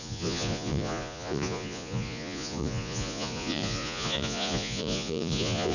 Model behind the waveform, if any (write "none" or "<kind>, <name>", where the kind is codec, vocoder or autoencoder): vocoder, Vocos